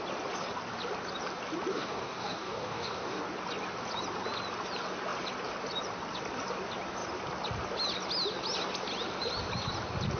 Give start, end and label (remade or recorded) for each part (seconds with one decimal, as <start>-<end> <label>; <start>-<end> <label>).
0.0-1.7 recorded; 1.7-3.2 remade; 3.2-10.2 recorded